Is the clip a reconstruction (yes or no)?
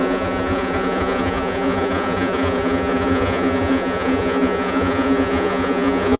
yes